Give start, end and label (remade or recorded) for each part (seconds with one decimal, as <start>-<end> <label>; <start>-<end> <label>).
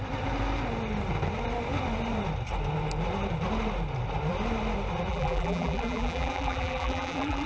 0.0-5.1 recorded; 5.1-7.5 remade